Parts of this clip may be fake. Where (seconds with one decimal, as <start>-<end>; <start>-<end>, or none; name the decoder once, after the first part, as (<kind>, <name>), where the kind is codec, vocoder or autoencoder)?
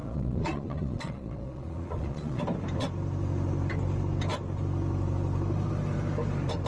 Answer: 0.0-2.4 (vocoder, Vocos)